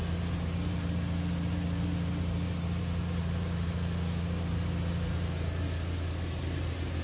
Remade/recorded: recorded